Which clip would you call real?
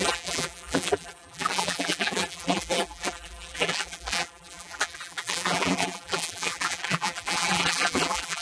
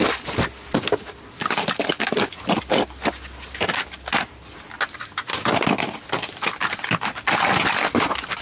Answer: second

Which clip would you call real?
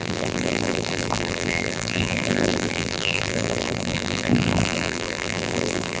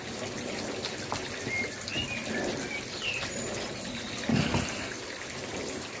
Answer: second